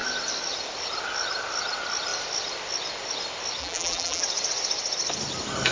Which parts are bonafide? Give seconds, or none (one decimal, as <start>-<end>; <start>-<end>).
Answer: 0.0-3.6; 4.2-5.7